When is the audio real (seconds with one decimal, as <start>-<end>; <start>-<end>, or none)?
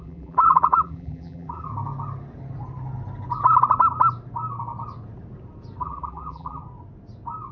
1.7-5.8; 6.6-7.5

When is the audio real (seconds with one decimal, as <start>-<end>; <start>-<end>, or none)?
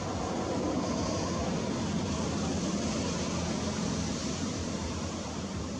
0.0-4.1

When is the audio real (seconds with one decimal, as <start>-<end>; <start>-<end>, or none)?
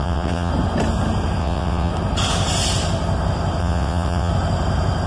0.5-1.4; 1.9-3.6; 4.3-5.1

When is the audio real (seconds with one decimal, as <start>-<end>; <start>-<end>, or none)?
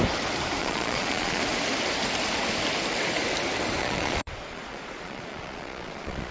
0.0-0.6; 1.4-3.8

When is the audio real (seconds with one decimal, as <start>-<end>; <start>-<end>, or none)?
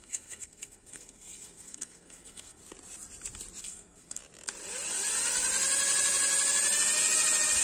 2.6-3.6; 4.2-7.6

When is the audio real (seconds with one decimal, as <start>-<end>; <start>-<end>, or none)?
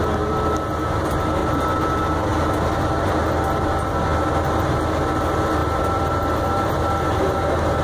0.0-1.4; 1.9-5.6; 6.7-7.8